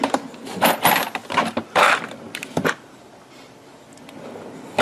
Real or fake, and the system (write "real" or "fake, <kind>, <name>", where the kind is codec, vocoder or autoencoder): real